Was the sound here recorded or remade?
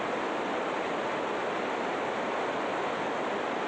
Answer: recorded